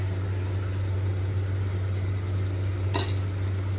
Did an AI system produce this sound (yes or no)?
no